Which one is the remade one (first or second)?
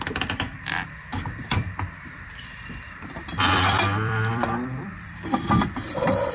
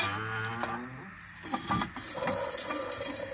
first